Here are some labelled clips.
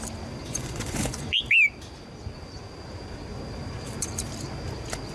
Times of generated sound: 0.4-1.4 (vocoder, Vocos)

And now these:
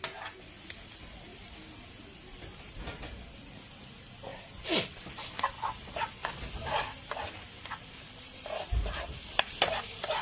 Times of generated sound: none

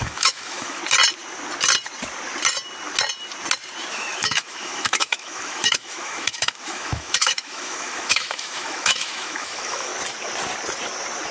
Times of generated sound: 0.0-0.8 (autoencoder, DAC-VAE); 3.9-9.9

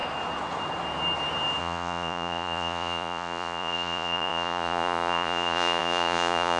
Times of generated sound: 1.6-6.6 (vocoder, Vocos)